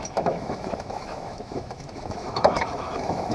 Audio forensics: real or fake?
fake